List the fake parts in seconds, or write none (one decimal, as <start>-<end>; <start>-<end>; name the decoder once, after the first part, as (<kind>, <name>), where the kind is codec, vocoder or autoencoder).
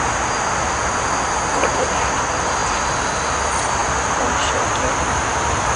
none